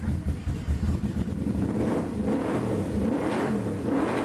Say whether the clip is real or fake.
fake